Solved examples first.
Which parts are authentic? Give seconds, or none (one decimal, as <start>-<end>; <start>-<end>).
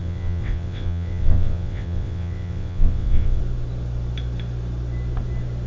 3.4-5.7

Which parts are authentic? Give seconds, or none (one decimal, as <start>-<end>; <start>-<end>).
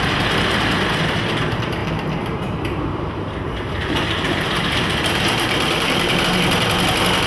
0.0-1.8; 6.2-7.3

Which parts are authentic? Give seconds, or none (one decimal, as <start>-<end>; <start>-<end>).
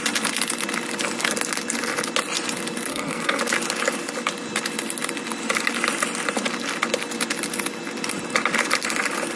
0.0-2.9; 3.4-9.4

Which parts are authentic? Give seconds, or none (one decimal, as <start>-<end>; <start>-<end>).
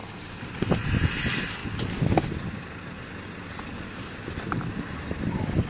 0.0-5.7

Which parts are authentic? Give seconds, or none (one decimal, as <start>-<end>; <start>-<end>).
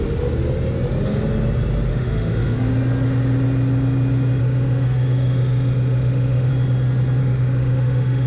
0.0-1.9; 2.7-4.4; 6.5-7.2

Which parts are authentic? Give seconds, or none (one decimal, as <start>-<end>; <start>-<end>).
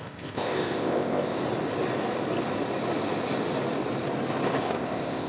1.4-4.6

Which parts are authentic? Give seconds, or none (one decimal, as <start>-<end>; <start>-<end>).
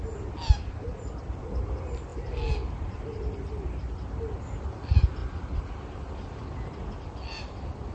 0.0-7.9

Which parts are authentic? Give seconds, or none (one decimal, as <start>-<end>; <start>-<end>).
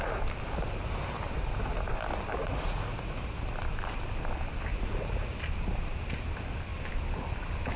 0.0-2.4; 3.1-4.7; 5.4-7.8